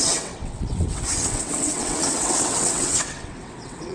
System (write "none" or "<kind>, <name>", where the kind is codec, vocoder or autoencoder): vocoder, WaveNeXt